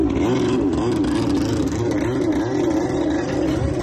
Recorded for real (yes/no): yes